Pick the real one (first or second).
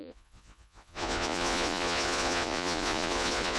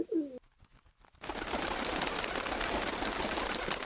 second